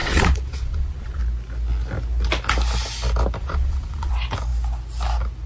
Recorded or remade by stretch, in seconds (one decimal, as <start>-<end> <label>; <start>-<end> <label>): 0.0-1.2 remade; 1.2-3.4 recorded; 3.4-4.1 remade; 4.1-5.5 recorded